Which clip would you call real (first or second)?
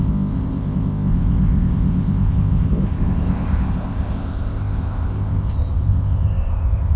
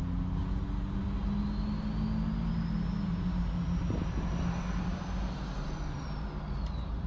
second